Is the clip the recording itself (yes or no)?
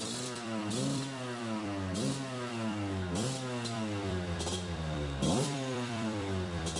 no